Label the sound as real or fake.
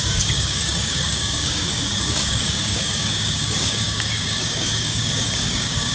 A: fake